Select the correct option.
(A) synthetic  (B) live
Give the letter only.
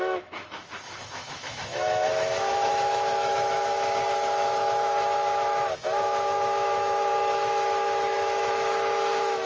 A